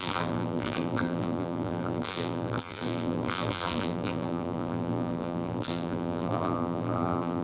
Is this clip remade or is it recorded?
remade